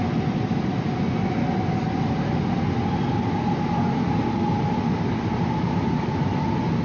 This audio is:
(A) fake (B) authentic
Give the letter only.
B